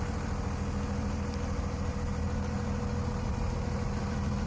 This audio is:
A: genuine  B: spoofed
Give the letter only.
A